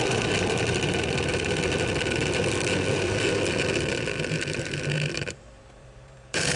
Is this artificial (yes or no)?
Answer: yes